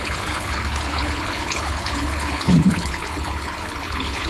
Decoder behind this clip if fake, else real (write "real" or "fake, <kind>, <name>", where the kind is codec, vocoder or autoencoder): fake, codec, HILCodec